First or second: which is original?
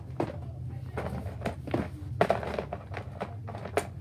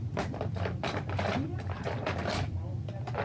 first